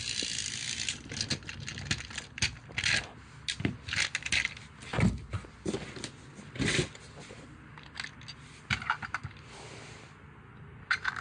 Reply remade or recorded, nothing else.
recorded